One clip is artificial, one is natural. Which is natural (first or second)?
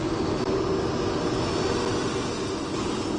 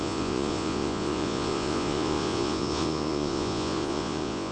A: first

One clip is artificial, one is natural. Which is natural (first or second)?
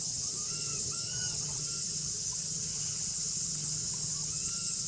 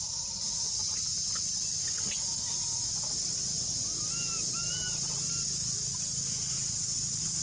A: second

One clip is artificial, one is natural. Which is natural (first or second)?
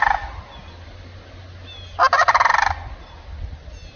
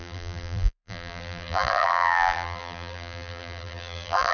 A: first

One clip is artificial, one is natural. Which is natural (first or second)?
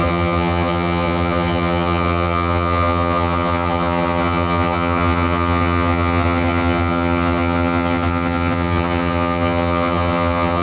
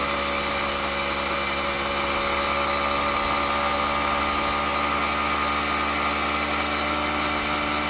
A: second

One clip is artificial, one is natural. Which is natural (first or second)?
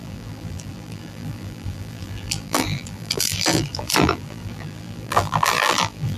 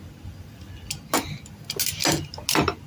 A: second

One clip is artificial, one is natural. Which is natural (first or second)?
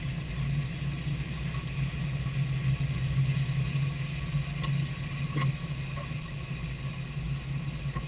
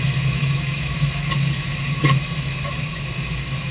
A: first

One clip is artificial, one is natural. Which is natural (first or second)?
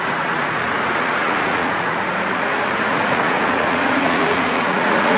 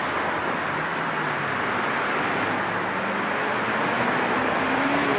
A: second